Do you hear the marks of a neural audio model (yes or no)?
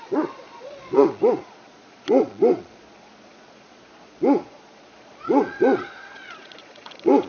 yes